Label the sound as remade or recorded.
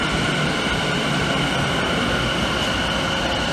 recorded